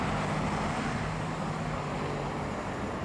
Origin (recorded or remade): recorded